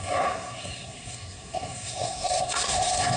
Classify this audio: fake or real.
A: fake